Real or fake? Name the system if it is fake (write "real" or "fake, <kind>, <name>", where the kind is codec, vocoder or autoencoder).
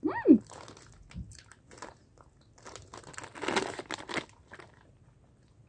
real